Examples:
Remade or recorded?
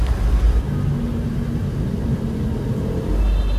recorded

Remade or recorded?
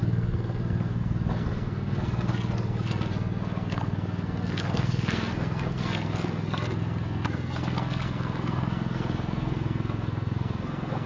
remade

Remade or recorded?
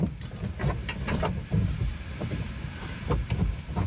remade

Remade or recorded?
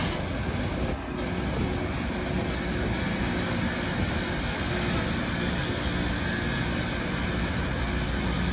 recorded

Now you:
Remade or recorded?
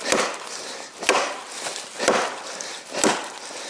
recorded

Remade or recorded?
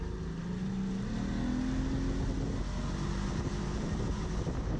recorded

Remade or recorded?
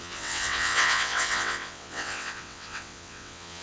remade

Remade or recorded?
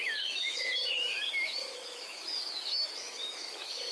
remade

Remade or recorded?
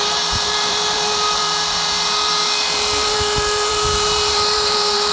remade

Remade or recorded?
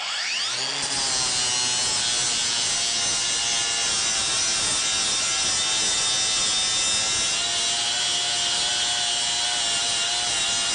recorded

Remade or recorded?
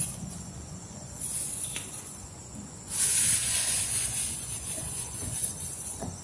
remade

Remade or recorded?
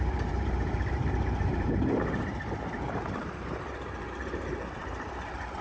remade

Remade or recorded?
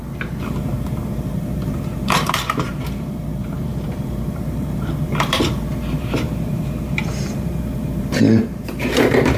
remade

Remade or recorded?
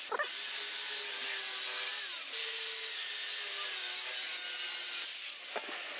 recorded